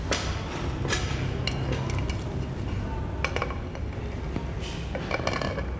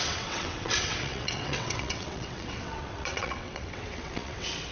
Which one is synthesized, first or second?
second